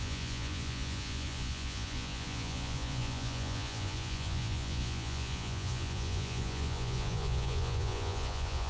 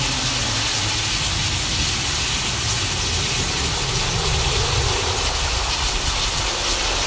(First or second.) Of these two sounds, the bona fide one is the second